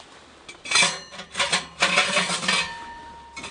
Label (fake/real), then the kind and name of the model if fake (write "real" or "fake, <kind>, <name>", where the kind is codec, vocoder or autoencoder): real